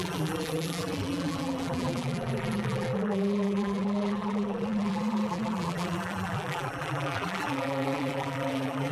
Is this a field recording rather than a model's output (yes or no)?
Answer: no